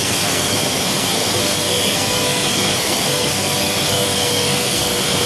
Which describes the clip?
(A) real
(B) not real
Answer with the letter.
B